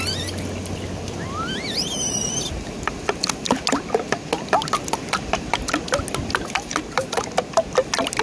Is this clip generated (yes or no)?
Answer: no